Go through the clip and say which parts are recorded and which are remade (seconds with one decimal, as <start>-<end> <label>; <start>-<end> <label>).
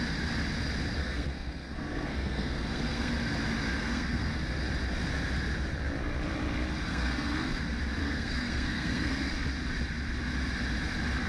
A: 0.0-1.0 recorded; 1.0-3.1 remade; 3.1-3.8 recorded; 3.8-4.3 remade; 4.3-6.9 recorded; 6.9-7.6 remade; 7.6-8.0 recorded; 8.0-9.3 remade; 9.3-11.3 recorded